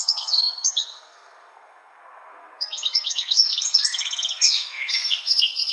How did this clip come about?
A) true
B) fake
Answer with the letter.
B